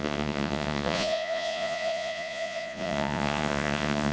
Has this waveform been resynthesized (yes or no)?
yes